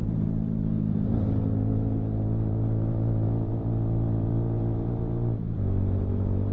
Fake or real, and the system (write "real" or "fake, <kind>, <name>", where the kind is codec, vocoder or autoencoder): fake, vocoder, BigVGAN v2